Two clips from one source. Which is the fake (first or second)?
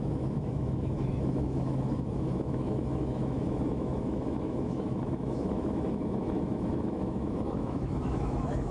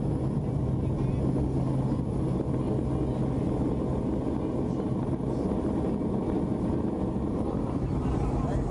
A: first